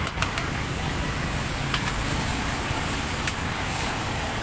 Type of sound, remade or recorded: remade